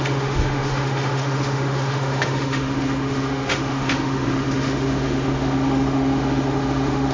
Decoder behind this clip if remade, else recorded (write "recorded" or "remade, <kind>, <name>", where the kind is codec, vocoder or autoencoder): remade, autoencoder, DAC-VAE